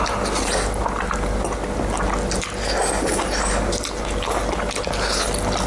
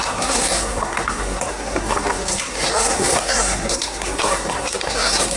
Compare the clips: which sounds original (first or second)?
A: first